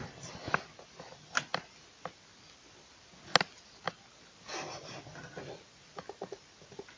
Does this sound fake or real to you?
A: real